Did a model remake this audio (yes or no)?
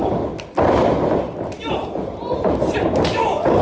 no